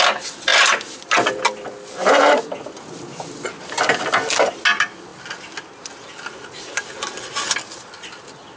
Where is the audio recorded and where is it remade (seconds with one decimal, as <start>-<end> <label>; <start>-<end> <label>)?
0.0-8.6 recorded